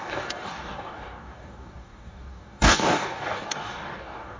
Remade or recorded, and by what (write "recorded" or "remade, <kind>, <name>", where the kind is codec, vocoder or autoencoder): remade, codec, DAC